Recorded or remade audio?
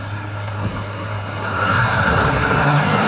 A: remade